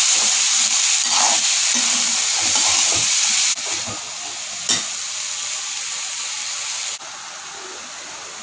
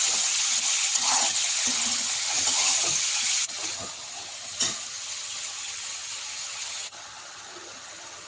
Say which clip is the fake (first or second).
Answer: second